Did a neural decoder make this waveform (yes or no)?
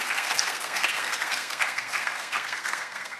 yes